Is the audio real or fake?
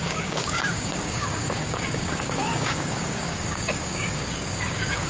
fake